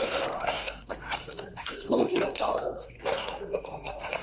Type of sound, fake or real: fake